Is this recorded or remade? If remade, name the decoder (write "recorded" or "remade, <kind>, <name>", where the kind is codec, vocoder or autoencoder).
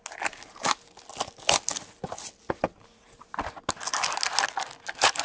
recorded